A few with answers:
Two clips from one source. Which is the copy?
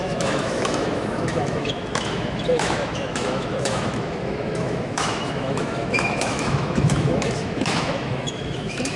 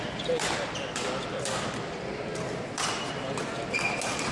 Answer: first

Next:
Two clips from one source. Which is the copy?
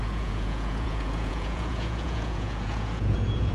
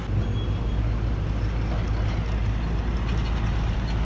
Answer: first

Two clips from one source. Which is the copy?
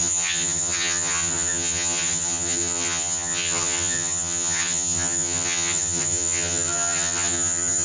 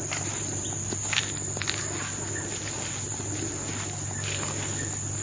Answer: first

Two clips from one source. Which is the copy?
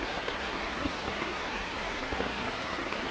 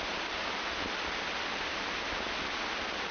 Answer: first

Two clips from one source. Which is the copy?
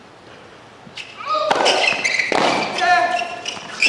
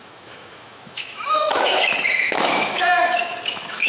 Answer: second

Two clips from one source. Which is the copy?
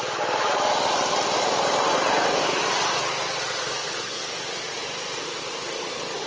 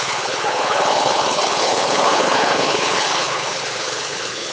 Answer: second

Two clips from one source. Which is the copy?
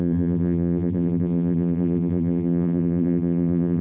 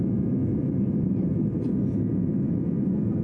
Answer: first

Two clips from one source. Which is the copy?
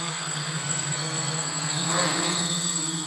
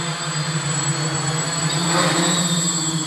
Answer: first